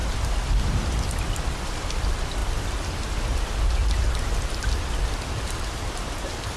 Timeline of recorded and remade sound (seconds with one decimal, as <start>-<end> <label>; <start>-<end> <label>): 0.0-6.6 recorded